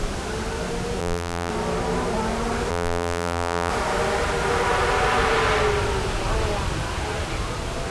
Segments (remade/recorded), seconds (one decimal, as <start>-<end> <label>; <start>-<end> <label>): 0.0-1.0 recorded; 1.0-1.5 remade; 1.5-2.7 recorded; 2.7-3.7 remade; 3.7-7.9 recorded